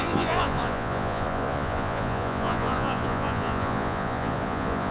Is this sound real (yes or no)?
no